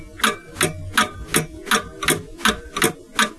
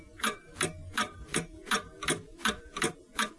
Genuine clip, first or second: first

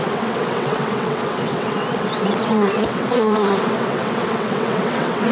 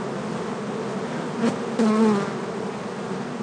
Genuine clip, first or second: second